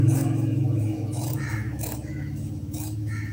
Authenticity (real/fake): fake